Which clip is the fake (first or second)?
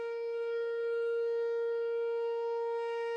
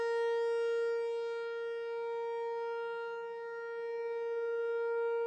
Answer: first